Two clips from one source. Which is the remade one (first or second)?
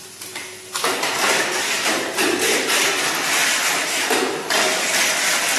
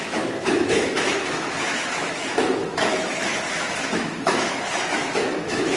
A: second